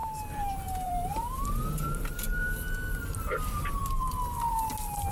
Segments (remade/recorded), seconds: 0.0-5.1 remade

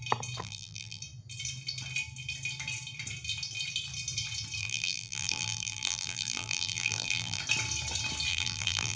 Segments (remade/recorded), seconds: 0.0-0.4 recorded; 0.4-1.0 remade; 1.0-4.6 recorded; 4.6-7.4 remade; 7.4-8.3 recorded; 8.3-9.0 remade

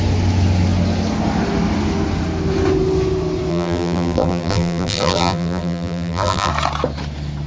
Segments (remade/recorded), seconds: 0.0-3.5 recorded; 3.5-6.5 remade; 6.5-7.5 recorded

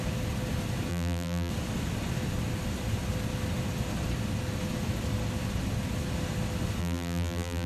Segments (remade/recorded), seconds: 0.0-0.9 recorded; 0.9-1.5 remade; 1.5-6.8 recorded; 6.8-7.7 remade

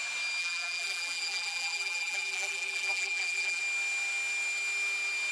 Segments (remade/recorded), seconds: 0.0-0.4 recorded; 0.4-3.6 remade; 3.6-5.3 recorded

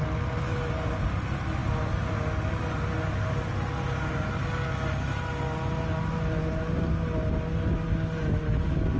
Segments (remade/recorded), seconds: 0.0-9.0 recorded

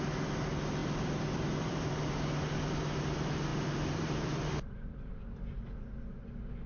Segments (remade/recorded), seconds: 0.0-0.8 recorded; 0.8-2.5 remade; 2.5-3.5 recorded; 3.5-5.1 remade; 5.1-6.7 recorded

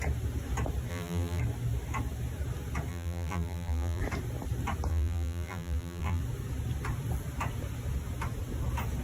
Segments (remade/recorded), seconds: 0.0-0.9 recorded; 0.9-1.4 remade; 1.4-2.9 recorded; 2.9-4.0 remade; 4.0-4.9 recorded; 4.9-6.2 remade; 6.2-9.0 recorded